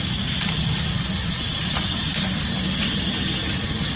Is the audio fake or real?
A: real